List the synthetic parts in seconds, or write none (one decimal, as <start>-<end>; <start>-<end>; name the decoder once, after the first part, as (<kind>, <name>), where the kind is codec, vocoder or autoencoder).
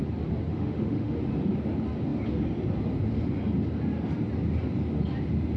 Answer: 0.5-1.2 (autoencoder, DAC-VAE)